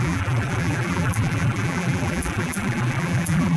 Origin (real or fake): fake